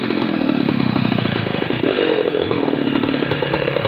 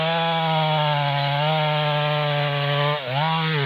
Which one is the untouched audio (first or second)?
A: second